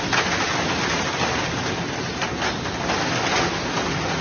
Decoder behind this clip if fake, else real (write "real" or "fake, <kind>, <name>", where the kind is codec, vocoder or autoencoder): real